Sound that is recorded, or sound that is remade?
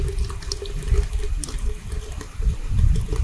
recorded